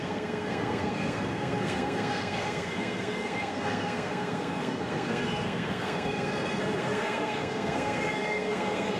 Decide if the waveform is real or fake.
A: fake